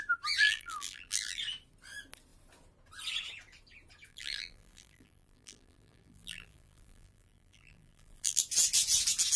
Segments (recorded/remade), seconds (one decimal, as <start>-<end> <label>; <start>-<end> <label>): 0.0-0.4 recorded; 0.4-1.4 remade; 1.4-4.1 recorded; 4.1-8.4 remade; 8.4-9.4 recorded